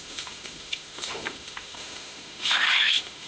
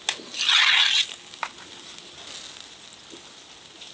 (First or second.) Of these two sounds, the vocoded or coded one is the first